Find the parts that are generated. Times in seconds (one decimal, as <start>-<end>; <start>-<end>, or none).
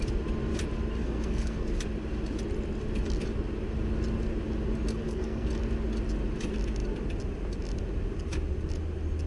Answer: 1.0-1.7; 4.9-5.5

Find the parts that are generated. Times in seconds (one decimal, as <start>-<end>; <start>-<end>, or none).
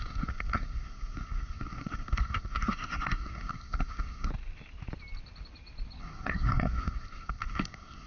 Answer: 0.0-4.3; 6.0-8.1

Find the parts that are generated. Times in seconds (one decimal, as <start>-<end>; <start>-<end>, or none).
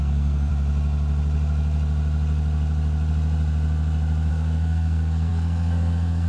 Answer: 0.0-0.5; 4.3-6.3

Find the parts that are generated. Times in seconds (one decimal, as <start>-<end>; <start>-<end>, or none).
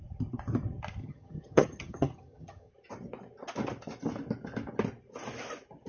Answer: 1.0-2.7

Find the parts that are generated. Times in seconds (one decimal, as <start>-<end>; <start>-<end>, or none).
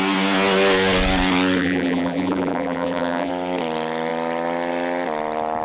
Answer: 1.6-3.3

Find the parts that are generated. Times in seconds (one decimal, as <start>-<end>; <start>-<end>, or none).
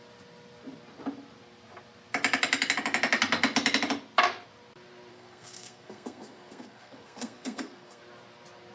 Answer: 5.1-8.0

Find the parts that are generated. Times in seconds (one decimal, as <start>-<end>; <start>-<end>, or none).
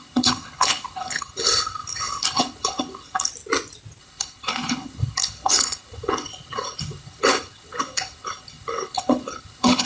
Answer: 0.0-3.3; 4.0-9.9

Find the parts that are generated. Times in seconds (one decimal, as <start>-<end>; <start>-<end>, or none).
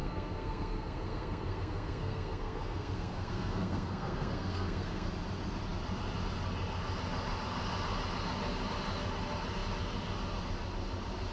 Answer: 0.0-5.1